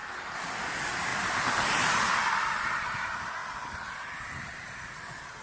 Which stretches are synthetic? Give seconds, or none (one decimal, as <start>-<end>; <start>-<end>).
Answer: 1.1-2.2; 3.4-4.7